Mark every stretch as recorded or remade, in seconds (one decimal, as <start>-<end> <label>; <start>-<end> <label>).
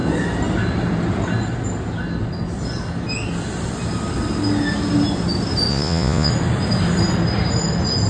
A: 0.0-5.7 recorded; 5.7-6.3 remade; 6.3-8.1 recorded